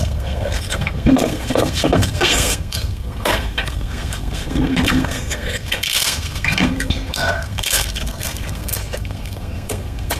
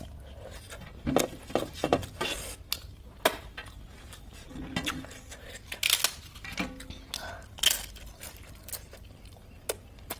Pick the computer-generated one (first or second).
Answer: first